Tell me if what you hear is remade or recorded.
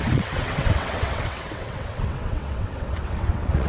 remade